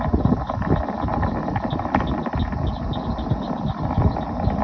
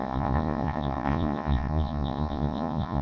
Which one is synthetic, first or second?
second